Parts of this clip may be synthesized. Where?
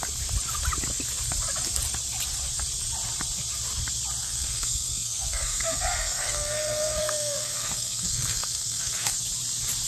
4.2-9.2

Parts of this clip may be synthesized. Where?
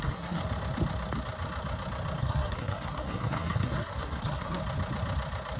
0.0-0.4; 2.2-4.6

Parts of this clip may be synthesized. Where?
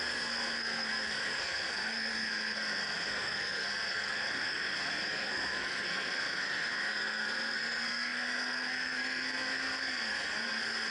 0.0-10.9